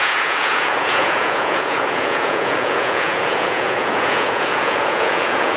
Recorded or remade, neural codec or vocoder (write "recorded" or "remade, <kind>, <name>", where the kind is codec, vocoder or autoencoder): remade, vocoder, Vocos